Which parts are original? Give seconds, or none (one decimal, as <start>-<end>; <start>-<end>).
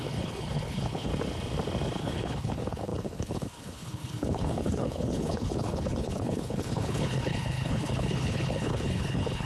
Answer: 1.1-2.0